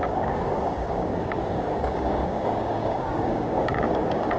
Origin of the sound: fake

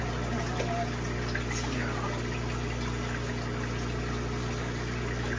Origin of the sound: real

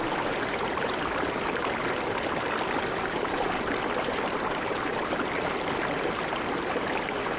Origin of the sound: real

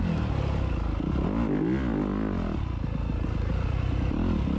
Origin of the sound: real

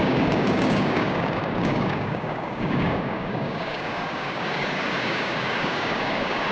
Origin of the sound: fake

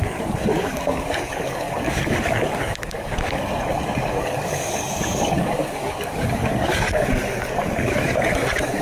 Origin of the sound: fake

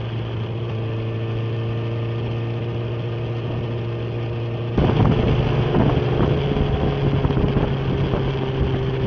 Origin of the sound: real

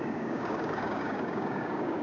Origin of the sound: fake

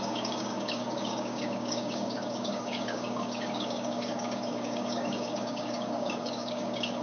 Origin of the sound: fake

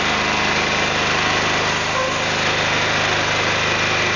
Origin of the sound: real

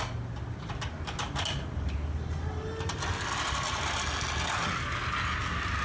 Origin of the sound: real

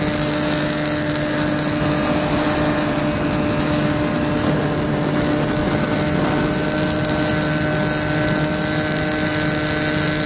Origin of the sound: real